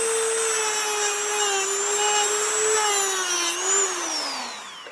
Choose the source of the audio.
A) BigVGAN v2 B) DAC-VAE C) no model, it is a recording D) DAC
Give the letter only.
C